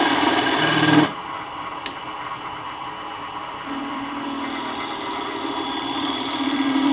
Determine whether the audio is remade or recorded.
remade